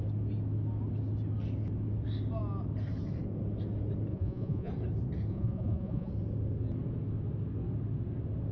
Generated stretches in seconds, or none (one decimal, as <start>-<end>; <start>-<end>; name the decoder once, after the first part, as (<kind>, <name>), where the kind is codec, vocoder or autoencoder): 4.1-4.7 (vocoder, Vocos); 5.3-6.1